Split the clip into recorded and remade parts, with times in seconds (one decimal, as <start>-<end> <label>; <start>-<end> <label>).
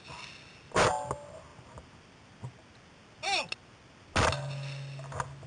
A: 0.0-5.5 recorded